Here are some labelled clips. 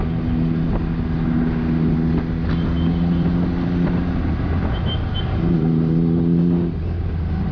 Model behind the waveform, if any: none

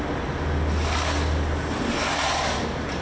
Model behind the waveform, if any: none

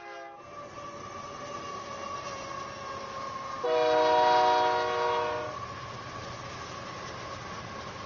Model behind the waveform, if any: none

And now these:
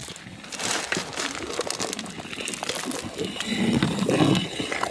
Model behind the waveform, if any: none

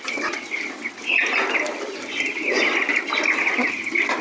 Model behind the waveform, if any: none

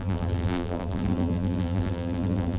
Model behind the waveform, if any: vocoder, BigVGAN v2